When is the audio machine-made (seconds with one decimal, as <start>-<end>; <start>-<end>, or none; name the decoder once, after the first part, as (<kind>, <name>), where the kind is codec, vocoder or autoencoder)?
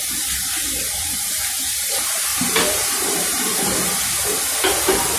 2.3-4.4 (vocoder, BigVGAN v2)